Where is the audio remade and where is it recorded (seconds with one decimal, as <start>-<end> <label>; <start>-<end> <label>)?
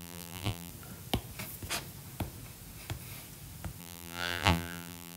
0.0-0.7 remade; 0.7-3.8 recorded; 3.8-5.2 remade